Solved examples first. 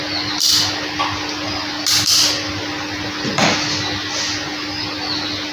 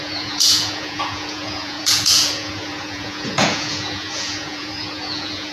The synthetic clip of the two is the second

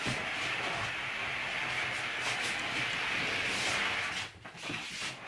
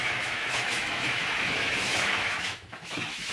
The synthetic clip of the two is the second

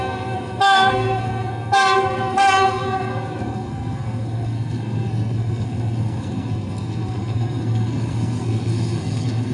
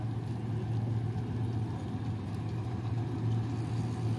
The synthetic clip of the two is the first